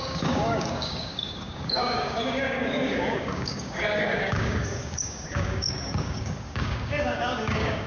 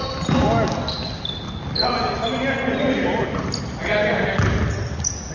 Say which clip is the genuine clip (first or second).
second